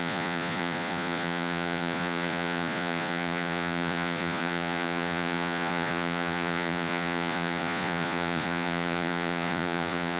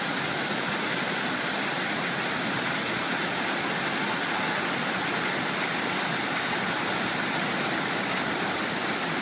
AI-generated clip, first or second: first